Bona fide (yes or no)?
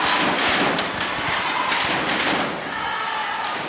yes